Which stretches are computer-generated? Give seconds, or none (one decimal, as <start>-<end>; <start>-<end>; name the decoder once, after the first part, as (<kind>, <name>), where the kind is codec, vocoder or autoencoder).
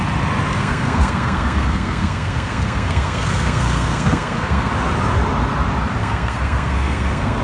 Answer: 0.6-4.7 (codec, SNAC); 6.0-7.4